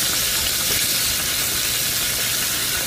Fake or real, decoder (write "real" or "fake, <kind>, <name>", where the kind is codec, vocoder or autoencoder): real